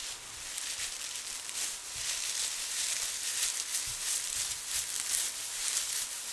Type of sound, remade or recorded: recorded